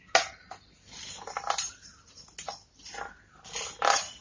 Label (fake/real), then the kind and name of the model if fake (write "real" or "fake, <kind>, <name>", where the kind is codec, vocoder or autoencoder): real